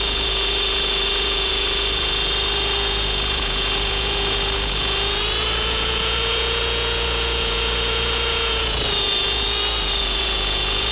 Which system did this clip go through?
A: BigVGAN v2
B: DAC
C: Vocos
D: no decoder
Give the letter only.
C